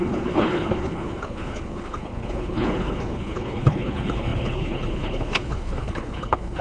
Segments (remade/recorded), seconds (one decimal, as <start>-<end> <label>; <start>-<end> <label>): 0.0-6.6 remade